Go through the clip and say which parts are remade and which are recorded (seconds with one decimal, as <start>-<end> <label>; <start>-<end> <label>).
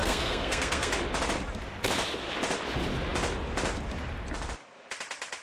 0.0-0.9 remade; 0.9-5.4 recorded